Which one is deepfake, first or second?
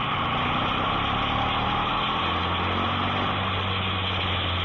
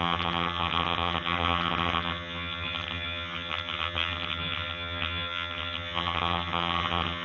second